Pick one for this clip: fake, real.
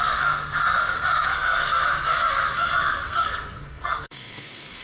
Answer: fake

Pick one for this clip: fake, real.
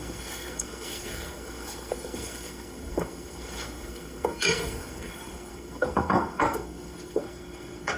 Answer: fake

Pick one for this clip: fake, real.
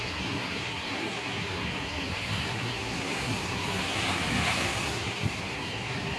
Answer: fake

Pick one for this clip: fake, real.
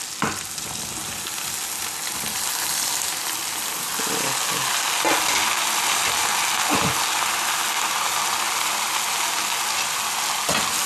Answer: real